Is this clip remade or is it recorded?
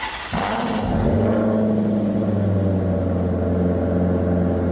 recorded